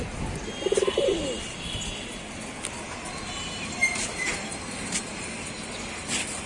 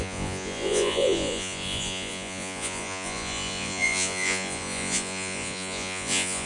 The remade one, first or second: second